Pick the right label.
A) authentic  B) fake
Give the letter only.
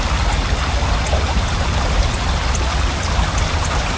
A